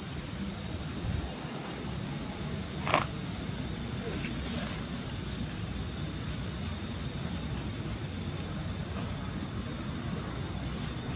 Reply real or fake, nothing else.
real